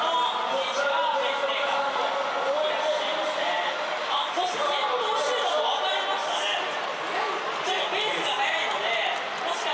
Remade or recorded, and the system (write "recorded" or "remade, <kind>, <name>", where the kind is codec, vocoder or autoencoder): recorded